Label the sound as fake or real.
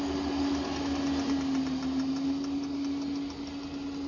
real